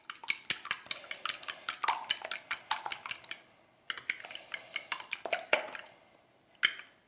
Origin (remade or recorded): recorded